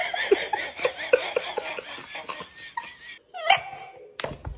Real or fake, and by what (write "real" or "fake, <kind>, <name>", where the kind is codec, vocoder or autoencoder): real